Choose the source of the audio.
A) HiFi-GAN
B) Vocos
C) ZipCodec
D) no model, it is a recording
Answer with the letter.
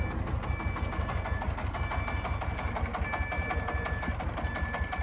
D